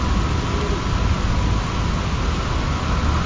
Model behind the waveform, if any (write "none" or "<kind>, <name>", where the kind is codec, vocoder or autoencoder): none